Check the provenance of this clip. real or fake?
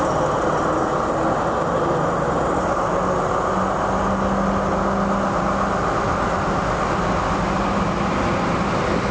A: real